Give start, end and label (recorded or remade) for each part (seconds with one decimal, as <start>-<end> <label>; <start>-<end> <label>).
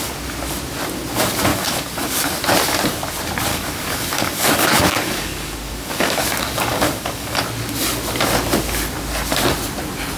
0.0-1.5 recorded; 1.5-2.3 remade; 2.3-3.5 recorded; 3.5-7.4 remade; 7.4-10.2 recorded